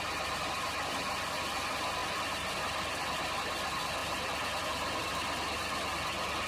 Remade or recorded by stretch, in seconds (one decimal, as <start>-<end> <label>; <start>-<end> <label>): 0.0-6.5 recorded